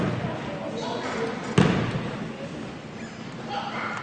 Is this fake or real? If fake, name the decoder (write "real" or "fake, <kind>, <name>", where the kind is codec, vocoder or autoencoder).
real